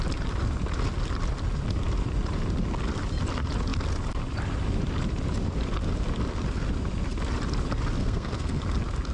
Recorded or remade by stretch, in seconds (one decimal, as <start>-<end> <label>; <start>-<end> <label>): 0.0-8.0 recorded; 8.0-8.6 remade; 8.6-9.1 recorded